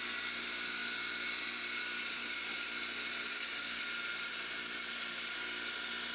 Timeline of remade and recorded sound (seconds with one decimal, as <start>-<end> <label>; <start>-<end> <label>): 0.0-3.3 recorded; 3.3-3.8 remade; 3.8-6.1 recorded